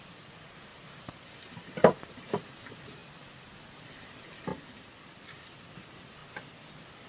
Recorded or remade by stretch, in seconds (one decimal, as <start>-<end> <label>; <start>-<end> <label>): 0.0-0.7 remade; 0.7-2.0 recorded; 2.0-3.0 remade; 3.0-3.9 recorded; 3.9-4.5 remade; 4.5-5.7 recorded; 5.7-6.2 remade; 6.2-7.1 recorded